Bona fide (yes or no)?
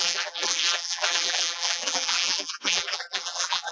no